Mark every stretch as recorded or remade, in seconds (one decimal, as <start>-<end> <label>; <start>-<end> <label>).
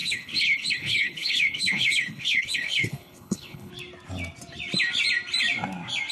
0.0-3.7 remade; 3.7-6.1 recorded